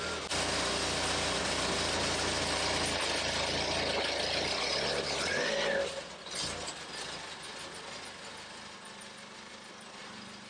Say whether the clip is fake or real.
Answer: real